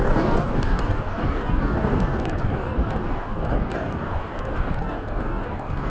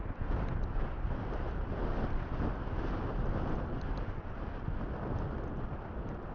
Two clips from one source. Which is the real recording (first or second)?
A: second